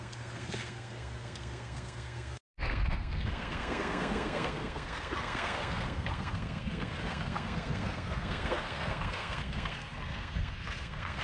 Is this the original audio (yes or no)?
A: no